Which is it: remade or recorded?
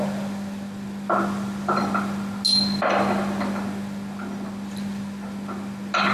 recorded